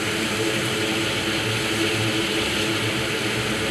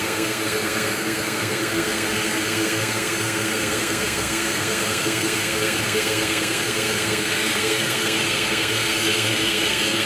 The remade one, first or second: second